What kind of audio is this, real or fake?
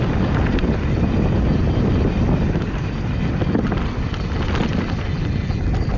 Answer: real